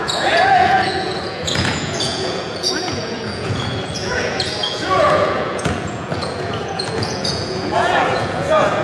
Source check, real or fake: fake